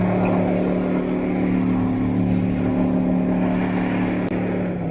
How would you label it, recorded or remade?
recorded